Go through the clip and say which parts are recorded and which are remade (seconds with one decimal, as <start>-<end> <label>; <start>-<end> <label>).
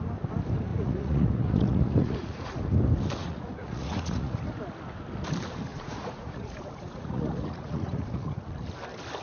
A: 0.0-0.7 recorded; 0.7-2.6 remade; 2.6-3.2 recorded; 3.2-4.4 remade; 4.4-5.7 recorded; 5.7-8.5 remade; 8.5-9.2 recorded